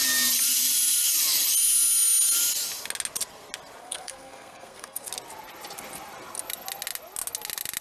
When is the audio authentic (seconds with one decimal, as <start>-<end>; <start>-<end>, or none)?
0.0-3.8; 5.1-7.8